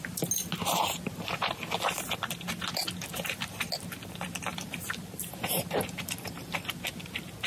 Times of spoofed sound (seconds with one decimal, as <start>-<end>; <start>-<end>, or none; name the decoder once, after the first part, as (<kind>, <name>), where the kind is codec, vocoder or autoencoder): 4.5-6.7 (vocoder, BigVGAN v2)